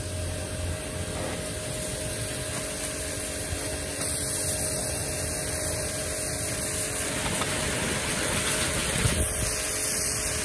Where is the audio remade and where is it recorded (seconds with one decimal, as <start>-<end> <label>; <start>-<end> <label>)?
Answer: 0.0-10.4 recorded